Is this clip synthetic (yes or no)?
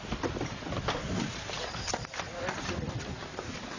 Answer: no